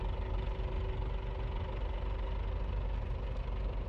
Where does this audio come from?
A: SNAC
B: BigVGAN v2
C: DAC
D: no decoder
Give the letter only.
D